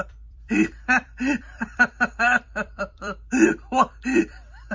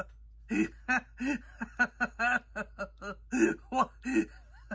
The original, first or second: second